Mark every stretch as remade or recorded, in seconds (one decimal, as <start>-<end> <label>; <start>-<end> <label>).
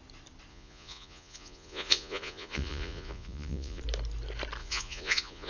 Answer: 0.0-0.5 recorded; 0.5-3.8 remade; 3.8-4.6 recorded; 4.6-5.5 remade